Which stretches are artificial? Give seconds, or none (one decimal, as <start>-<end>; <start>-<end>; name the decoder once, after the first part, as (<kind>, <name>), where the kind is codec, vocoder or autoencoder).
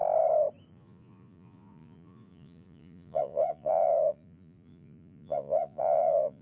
0.7-6.4 (vocoder, Vocos)